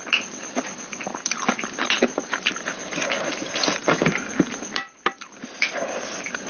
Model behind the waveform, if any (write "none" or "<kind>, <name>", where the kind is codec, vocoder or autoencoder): none